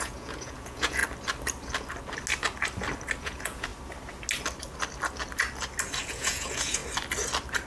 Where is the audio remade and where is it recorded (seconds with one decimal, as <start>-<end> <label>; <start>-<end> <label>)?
0.0-1.0 remade; 1.0-3.2 recorded; 3.2-3.7 remade; 3.7-6.0 recorded; 6.0-6.8 remade; 6.8-7.7 recorded